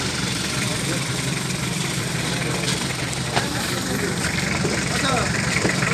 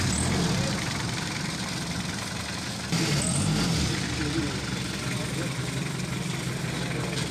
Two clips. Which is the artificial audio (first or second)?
first